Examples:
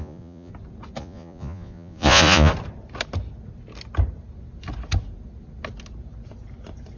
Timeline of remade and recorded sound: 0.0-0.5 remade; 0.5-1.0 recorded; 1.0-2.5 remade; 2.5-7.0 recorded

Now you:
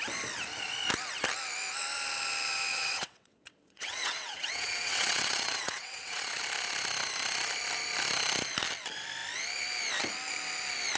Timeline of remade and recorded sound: 0.0-2.7 recorded; 2.7-6.4 remade; 6.4-11.0 recorded

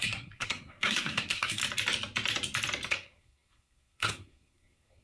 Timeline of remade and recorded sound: 0.0-1.6 remade; 1.6-2.9 recorded; 2.9-5.0 remade

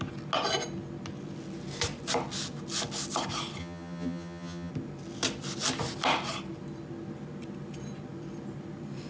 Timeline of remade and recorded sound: 0.0-3.6 recorded; 3.6-4.7 remade; 4.7-9.1 recorded

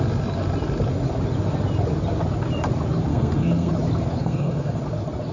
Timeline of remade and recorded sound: 0.0-3.1 recorded; 3.1-3.7 remade; 3.7-4.2 recorded; 4.2-4.8 remade; 4.8-5.3 recorded

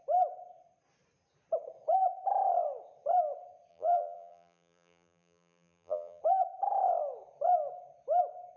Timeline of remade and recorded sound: 0.0-3.7 recorded; 3.7-6.2 remade; 6.2-8.6 recorded